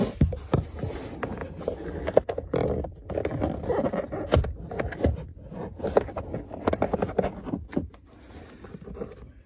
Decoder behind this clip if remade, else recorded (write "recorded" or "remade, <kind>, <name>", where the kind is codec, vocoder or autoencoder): recorded